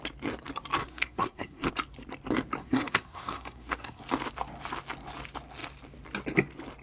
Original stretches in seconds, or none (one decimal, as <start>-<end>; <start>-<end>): 0.0-0.8; 1.7-2.6; 4.0-6.8